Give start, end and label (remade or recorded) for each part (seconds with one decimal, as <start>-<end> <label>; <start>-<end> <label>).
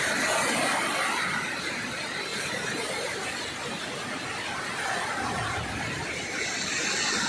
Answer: 0.0-7.3 recorded